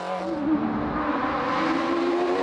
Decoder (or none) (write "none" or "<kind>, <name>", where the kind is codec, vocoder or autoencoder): none